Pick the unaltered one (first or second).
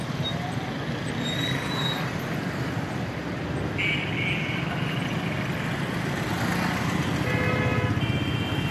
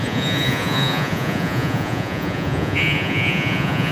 first